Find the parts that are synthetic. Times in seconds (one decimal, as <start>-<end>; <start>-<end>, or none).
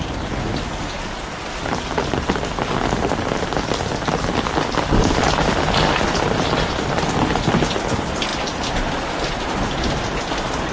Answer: none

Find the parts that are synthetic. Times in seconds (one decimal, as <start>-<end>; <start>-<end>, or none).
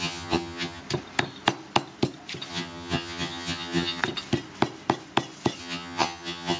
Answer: 0.0-0.8; 2.5-4.0; 5.6-6.6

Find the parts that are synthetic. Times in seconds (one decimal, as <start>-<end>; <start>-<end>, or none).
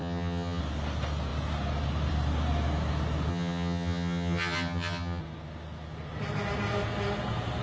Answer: 0.0-0.6; 3.3-5.2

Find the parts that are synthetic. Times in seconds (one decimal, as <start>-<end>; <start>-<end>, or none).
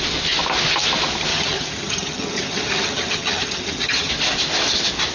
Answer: 1.3-4.1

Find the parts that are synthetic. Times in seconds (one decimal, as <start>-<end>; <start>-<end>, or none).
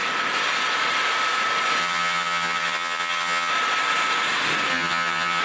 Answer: 1.8-3.5; 4.7-5.4